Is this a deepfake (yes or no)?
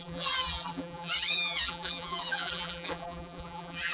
yes